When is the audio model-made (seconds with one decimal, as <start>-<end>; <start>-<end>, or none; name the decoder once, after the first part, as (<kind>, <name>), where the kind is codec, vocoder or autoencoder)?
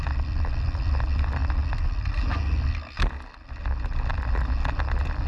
none